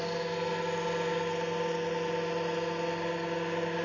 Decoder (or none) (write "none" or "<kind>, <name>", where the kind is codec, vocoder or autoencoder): none